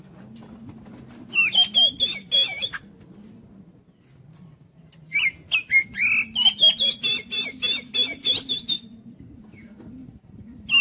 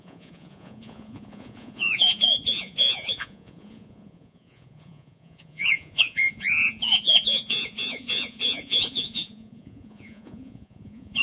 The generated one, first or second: second